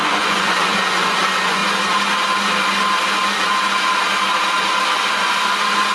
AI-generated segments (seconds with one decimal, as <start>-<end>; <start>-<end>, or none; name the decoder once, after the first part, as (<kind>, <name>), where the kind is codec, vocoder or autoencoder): 0.0-1.6 (vocoder, Vocos); 5.1-5.9